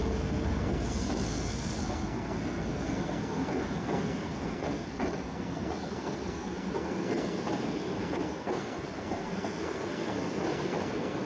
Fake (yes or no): yes